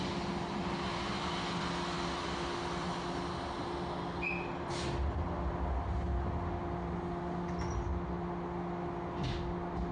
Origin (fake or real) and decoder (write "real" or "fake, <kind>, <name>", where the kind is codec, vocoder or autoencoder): real